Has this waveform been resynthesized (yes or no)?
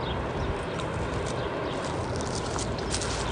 no